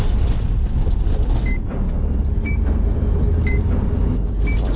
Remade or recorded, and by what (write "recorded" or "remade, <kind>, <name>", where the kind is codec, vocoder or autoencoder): recorded